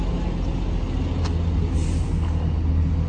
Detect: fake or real real